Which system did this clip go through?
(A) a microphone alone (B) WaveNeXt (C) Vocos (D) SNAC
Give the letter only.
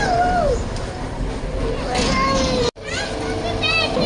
A